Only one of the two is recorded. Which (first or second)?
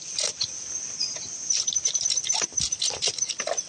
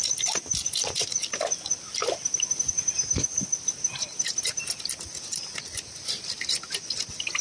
second